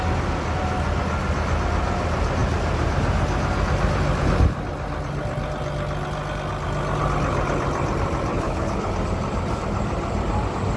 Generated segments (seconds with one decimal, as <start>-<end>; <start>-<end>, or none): 8.3-8.9